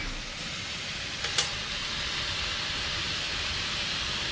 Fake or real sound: real